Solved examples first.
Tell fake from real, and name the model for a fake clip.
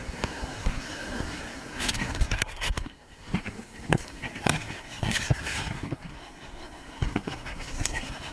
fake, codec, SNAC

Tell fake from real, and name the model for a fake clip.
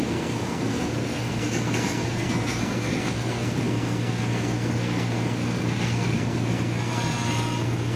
fake, codec, SNAC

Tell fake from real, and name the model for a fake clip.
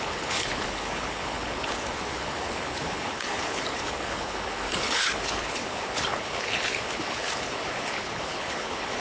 fake, codec, HILCodec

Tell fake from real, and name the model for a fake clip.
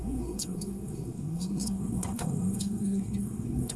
fake, codec, SNAC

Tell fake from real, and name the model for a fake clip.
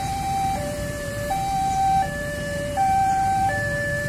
fake, vocoder, BigVGAN v2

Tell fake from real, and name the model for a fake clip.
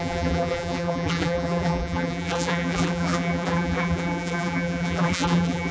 fake, vocoder, BigVGAN v2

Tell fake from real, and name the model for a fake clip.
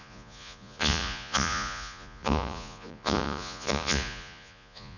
fake, vocoder, Vocos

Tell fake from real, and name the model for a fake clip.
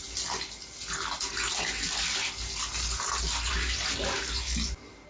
real